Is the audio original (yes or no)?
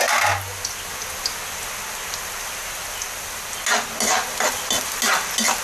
yes